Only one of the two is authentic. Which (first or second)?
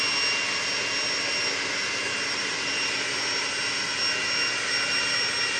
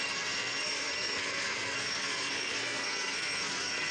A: first